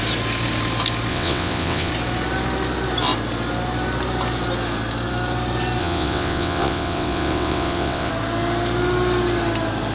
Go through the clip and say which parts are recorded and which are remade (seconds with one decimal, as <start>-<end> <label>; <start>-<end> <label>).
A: 0.0-1.1 recorded; 1.1-1.9 remade; 1.9-5.8 recorded; 5.8-8.1 remade; 8.1-9.9 recorded